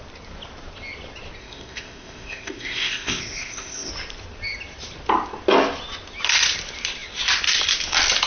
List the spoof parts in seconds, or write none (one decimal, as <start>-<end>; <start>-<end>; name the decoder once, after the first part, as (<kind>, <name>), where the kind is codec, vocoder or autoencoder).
1.4-3.9 (codec, ZipCodec)